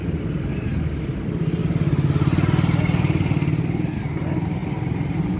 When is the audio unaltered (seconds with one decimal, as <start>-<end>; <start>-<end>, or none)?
0.0-4.6